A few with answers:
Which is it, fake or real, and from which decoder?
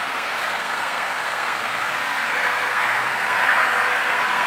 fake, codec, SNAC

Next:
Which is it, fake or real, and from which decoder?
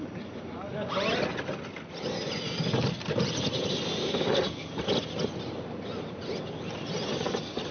real